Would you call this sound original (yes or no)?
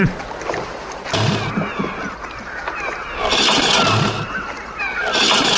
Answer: yes